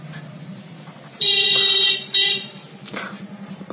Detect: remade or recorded recorded